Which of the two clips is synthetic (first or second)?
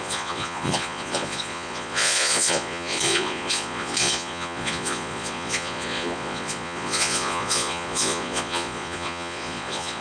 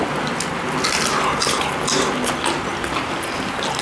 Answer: first